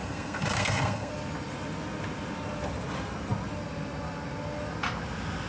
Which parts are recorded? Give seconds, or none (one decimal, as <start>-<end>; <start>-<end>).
1.1-5.5